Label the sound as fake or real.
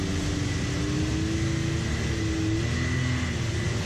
real